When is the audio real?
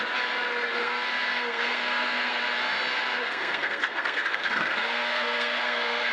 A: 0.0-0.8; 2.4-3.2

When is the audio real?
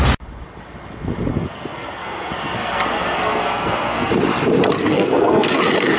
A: 0.0-1.3; 4.1-4.9; 5.6-6.0